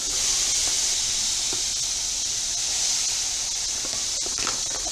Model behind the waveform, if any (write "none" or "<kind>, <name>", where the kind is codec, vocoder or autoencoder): none